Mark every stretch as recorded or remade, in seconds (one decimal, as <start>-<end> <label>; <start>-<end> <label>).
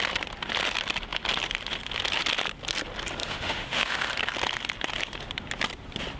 0.0-3.2 recorded; 3.2-4.1 remade; 4.1-6.2 recorded